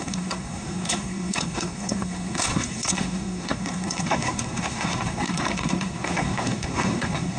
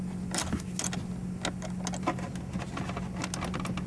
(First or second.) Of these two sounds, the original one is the second